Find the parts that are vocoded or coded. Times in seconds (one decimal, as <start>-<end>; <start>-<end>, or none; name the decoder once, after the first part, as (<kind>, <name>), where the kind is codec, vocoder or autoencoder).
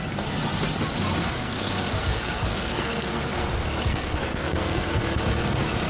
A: 1.2-3.5 (codec, SNAC); 3.9-5.0